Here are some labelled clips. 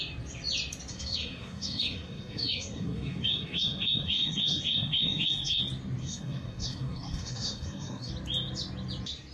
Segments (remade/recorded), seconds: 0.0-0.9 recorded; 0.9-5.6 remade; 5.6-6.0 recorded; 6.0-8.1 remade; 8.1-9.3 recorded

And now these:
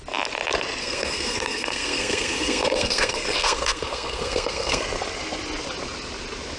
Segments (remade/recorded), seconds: 0.0-0.8 recorded; 0.8-4.8 remade; 4.8-6.6 recorded

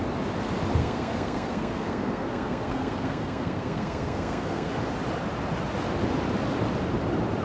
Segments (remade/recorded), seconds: 0.0-0.8 recorded; 0.8-4.7 remade; 4.7-7.4 recorded

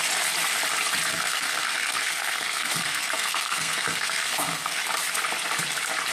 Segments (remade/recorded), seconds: 0.0-1.1 recorded; 1.1-4.8 remade; 4.8-6.1 recorded